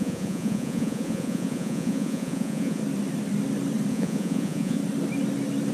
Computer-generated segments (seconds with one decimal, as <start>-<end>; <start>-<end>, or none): 0.0-2.8; 3.9-4.8